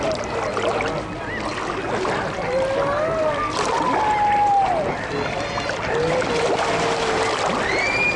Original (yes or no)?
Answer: yes